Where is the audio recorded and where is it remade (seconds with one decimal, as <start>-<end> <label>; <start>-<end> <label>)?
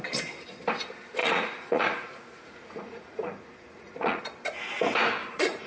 0.0-1.2 recorded; 1.2-4.2 remade; 4.2-5.2 recorded; 5.2-5.7 remade